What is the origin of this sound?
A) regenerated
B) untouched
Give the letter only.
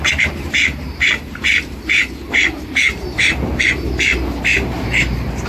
A